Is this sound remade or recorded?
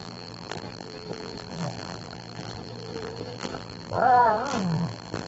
remade